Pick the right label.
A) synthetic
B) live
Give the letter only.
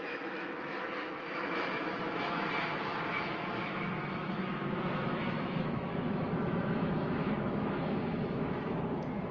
A